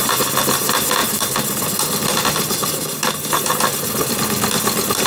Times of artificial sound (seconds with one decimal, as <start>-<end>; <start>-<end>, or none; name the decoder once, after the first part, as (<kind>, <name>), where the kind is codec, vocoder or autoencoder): none